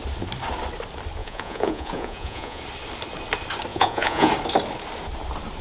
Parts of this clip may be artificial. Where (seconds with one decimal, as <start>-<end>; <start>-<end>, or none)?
1.2-2.6; 3.7-4.3